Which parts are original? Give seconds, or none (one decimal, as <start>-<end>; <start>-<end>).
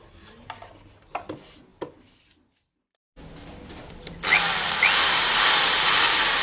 0.0-6.4